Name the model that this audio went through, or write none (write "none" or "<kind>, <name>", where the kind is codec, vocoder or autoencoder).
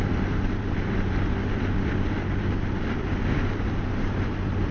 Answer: vocoder, BigVGAN v2